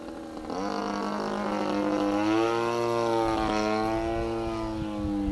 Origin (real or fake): real